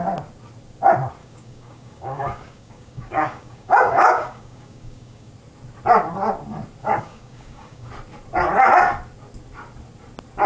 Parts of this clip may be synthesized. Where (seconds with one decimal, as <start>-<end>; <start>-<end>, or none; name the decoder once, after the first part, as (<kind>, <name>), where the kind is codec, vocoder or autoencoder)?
1.2-5.3 (codec, DAC); 6.8-7.9